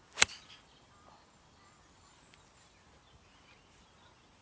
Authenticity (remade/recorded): recorded